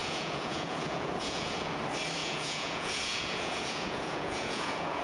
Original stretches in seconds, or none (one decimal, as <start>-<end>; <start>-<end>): 1.8-2.2